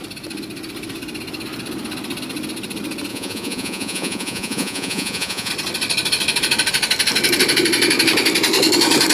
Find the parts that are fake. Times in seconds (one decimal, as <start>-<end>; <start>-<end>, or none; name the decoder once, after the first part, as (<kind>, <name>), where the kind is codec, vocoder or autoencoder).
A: 3.1-5.5 (vocoder, Vocos)